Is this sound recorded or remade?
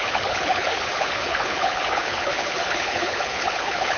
remade